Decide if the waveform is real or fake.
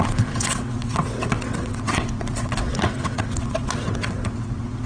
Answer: fake